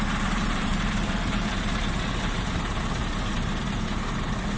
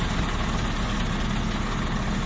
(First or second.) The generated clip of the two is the first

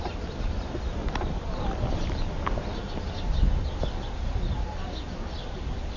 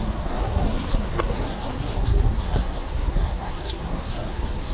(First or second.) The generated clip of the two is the second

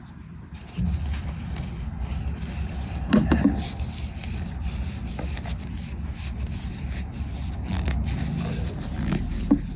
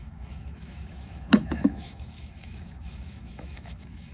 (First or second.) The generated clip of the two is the second